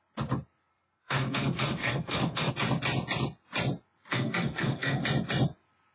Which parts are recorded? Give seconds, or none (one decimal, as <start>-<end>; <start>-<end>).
0.0-0.7; 2.5-4.1; 5.0-5.9